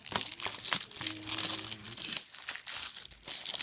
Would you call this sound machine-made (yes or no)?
no